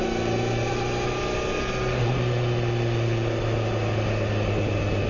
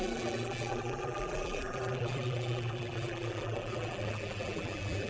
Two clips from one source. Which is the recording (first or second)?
first